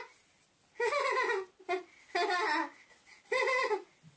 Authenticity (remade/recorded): recorded